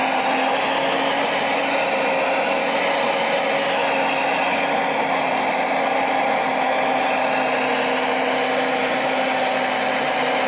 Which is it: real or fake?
real